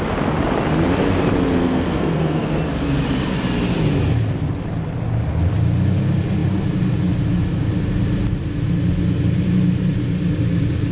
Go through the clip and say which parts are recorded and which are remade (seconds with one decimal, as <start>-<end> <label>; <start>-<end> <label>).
0.0-1.6 recorded; 1.6-2.6 remade; 2.6-10.9 recorded